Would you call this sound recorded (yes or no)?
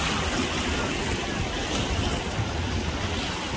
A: yes